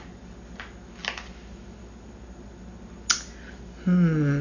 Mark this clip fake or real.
real